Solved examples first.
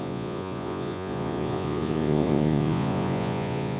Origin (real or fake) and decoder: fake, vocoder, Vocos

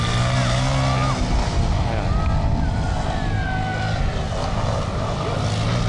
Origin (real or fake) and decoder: real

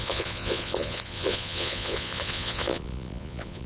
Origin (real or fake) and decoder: fake, vocoder, Vocos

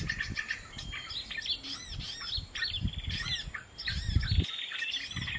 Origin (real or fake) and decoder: real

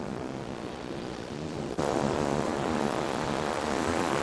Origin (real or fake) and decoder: fake, vocoder, Vocos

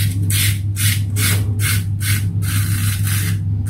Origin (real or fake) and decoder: real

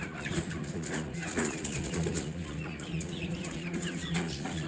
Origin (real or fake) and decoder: fake, vocoder, Vocos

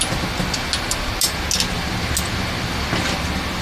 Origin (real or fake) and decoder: real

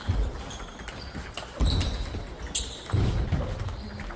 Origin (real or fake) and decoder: real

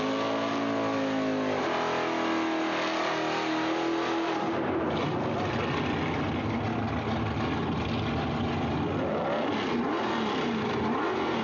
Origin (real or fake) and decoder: real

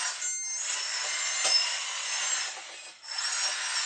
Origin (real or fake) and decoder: real